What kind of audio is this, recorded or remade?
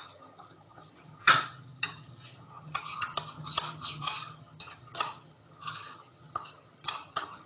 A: remade